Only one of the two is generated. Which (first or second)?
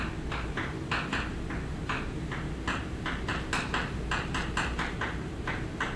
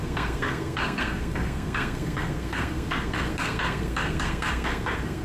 second